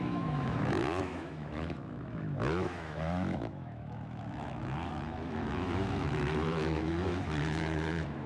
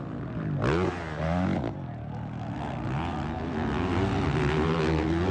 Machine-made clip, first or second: first